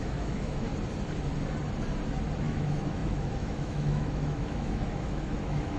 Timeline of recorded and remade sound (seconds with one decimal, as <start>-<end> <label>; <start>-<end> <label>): 0.0-0.7 remade; 0.7-2.4 recorded; 2.4-5.8 remade

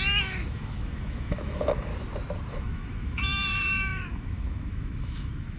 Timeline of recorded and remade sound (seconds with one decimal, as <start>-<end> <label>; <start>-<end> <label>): 0.0-1.9 remade; 1.9-2.5 recorded; 2.5-5.6 remade

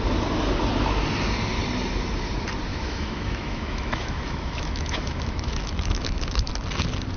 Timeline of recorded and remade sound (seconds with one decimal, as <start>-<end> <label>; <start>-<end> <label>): 0.0-2.7 recorded; 2.7-6.5 remade; 6.5-7.2 recorded

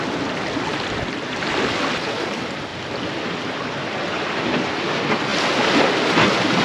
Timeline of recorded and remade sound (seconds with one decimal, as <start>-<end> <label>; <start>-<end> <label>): 0.0-6.6 recorded

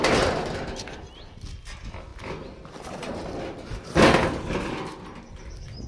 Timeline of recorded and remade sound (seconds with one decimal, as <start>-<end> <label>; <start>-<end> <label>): 0.0-5.9 recorded

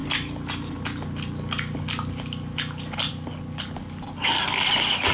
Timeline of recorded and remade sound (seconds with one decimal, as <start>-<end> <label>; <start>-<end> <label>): 0.0-5.1 recorded

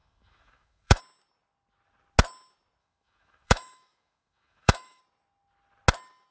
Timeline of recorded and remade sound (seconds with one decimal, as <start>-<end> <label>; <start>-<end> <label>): 0.0-1.0 remade; 1.0-2.8 recorded; 2.8-5.0 remade; 5.0-6.3 recorded